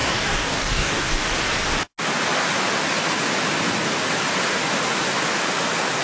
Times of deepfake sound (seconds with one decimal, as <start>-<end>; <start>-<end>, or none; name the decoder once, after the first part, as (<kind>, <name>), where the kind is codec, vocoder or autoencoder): 0.0-1.2 (codec, DAC)